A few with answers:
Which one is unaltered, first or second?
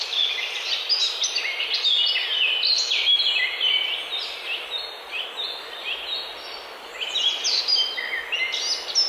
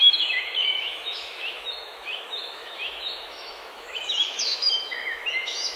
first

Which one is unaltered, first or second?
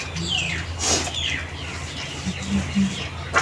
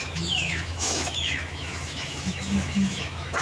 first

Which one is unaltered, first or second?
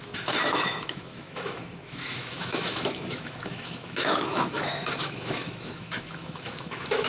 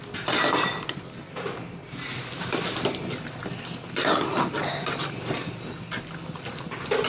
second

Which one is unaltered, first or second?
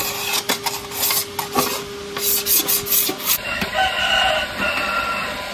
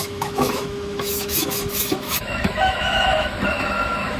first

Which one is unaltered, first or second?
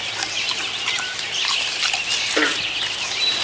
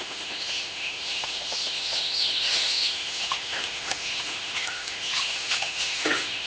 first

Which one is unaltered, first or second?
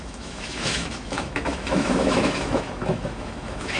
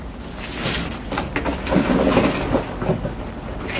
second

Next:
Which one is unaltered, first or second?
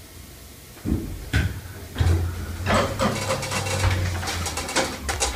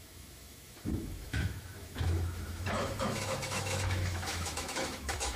first